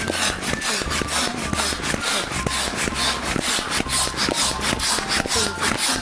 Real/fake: real